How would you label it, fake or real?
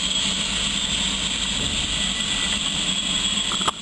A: real